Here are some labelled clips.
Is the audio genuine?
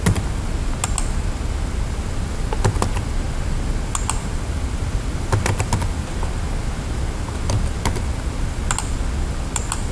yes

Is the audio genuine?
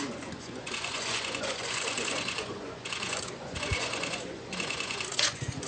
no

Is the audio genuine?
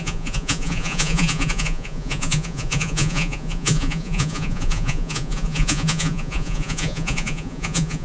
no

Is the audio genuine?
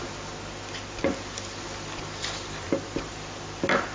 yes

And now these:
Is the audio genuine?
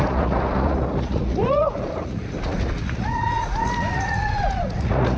no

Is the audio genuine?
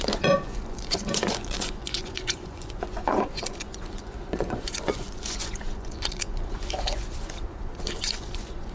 no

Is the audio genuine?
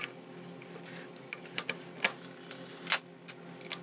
yes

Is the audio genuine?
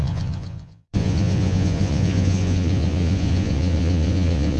no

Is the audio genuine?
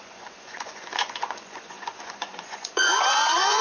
no